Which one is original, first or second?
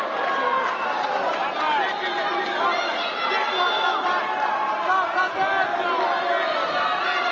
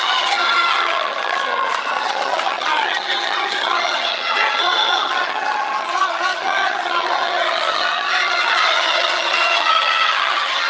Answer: first